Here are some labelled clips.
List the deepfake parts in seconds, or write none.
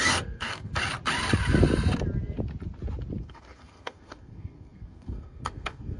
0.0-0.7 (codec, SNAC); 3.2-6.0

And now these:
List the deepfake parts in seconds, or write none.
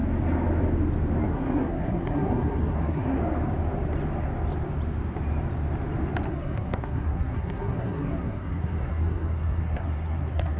1.2-3.2 (codec, SNAC); 6.3-10.6